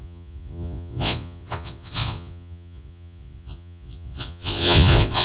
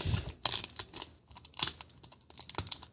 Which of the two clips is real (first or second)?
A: second